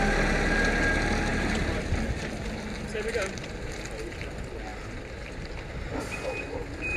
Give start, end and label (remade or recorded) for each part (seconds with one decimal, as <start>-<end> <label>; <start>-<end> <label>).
0.0-7.0 recorded